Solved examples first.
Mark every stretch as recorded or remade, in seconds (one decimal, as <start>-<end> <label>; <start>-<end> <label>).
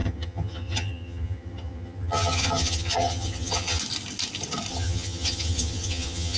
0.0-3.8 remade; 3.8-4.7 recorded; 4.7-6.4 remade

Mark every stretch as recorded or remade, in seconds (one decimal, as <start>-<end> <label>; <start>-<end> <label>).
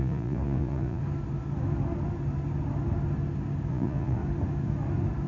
0.0-1.0 remade; 1.0-3.7 recorded; 3.7-4.2 remade; 4.2-5.3 recorded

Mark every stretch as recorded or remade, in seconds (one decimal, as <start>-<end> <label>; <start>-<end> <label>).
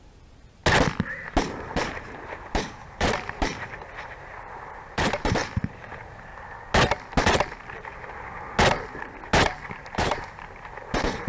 0.0-0.6 remade; 0.6-1.7 recorded; 1.7-6.3 remade; 6.3-9.6 recorded; 9.6-11.3 remade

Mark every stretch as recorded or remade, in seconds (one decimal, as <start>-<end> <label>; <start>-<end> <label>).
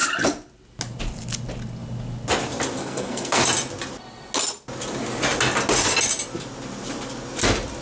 0.0-2.8 recorded; 2.8-3.4 remade; 3.4-7.8 recorded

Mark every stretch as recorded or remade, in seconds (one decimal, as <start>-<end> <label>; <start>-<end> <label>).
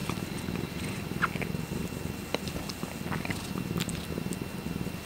0.0-5.1 recorded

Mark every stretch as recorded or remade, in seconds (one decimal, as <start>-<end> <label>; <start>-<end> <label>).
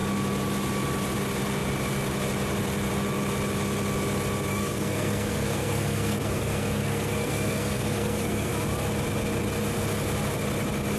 0.0-4.5 recorded; 4.5-8.5 remade; 8.5-11.0 recorded